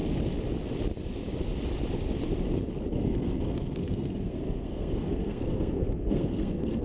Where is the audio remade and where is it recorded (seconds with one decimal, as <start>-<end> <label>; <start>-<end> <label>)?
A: 0.0-2.9 recorded; 2.9-6.8 remade